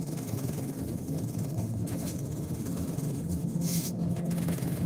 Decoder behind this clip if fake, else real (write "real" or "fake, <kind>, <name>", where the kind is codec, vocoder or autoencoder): fake, autoencoder, DAC-VAE